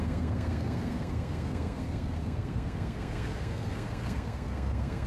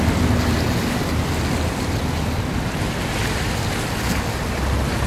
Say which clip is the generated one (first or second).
first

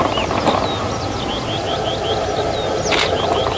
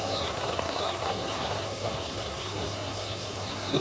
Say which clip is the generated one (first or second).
second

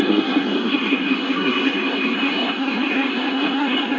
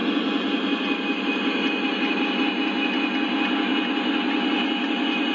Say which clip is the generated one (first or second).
first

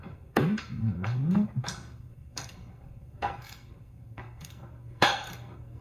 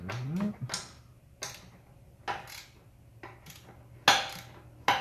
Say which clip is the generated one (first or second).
first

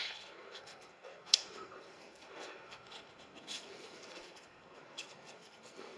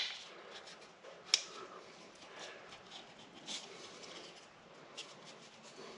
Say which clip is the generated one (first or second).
first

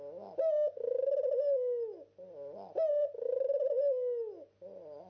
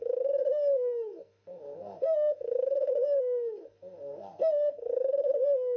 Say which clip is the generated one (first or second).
second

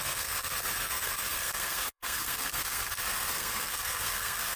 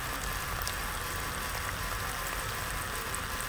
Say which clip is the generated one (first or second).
first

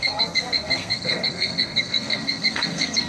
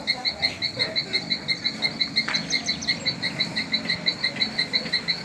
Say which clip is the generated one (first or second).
first